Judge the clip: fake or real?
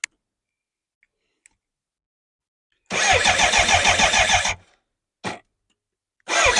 real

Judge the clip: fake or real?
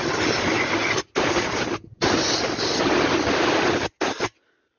real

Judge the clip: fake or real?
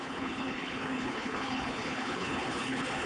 fake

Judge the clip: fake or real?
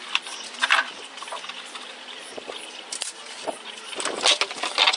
real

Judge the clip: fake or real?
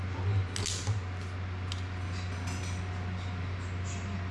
real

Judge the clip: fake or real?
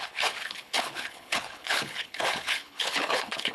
fake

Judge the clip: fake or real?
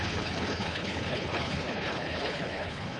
fake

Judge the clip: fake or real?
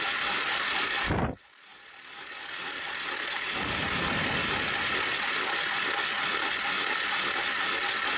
real